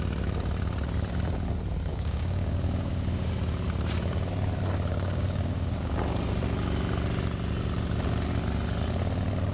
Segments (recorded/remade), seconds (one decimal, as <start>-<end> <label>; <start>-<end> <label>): 0.0-1.9 recorded; 1.9-3.3 remade; 3.3-4.9 recorded; 4.9-6.0 remade; 6.0-9.5 recorded